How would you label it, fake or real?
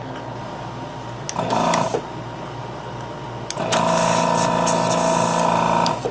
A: real